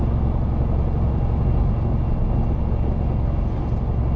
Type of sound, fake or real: real